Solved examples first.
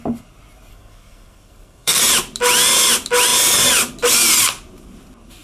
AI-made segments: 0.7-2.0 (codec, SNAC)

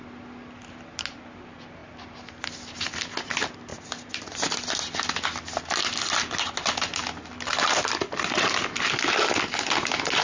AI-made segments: none

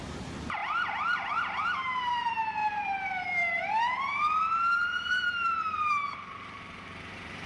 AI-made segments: 0.0-0.6 (vocoder, BigVGAN v2); 1.4-7.5

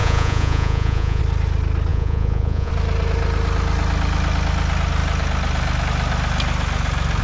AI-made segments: 0.0-1.2 (vocoder, Vocos); 1.9-2.7

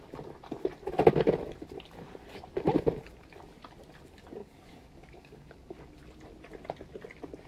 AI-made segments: 4.4-6.0 (codec, DAC)

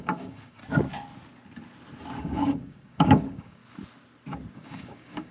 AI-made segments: 0.0-0.6 (codec, DAC); 2.2-3.6; 4.5-5.3